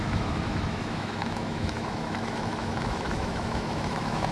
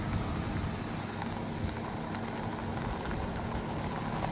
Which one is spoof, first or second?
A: first